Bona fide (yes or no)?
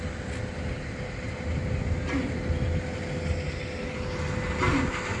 yes